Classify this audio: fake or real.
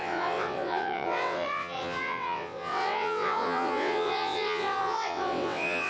fake